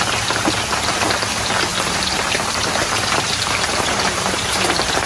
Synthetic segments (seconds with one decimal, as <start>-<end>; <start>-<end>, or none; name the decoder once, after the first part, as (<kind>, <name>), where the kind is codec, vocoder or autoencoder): 1.7-5.1 (vocoder, BigVGAN v2)